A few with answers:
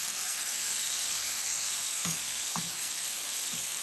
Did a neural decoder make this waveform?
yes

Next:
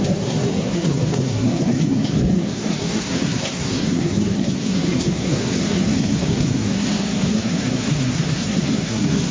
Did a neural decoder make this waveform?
yes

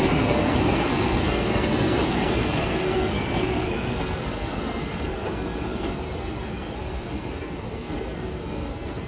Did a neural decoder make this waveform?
yes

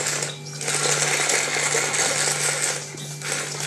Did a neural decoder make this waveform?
no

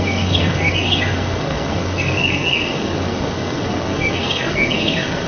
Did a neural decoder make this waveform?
yes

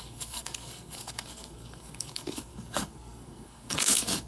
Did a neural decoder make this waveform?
yes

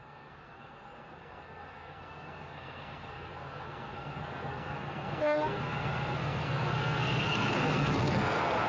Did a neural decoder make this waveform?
yes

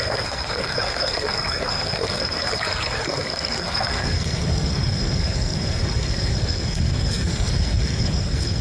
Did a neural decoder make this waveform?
yes